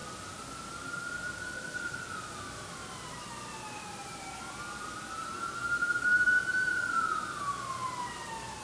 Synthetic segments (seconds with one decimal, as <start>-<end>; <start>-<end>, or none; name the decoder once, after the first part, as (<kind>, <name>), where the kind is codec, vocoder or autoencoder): none